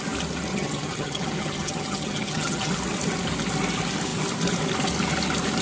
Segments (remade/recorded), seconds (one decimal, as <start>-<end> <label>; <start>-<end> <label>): 0.0-0.5 recorded; 0.5-2.7 remade; 2.7-5.6 recorded